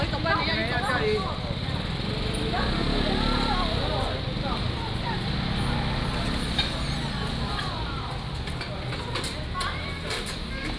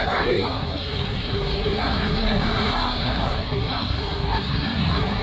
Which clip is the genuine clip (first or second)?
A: first